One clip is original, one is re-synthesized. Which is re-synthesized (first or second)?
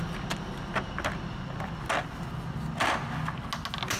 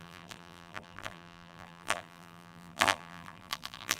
second